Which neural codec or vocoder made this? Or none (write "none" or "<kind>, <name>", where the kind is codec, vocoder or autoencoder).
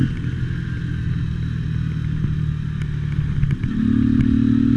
none